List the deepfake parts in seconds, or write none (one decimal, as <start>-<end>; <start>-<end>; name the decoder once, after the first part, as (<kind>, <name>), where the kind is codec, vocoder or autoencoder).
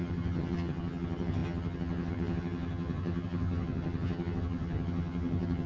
0.0-5.7 (vocoder, HiFi-GAN)